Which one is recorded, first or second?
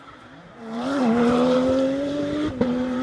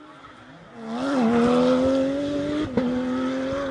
second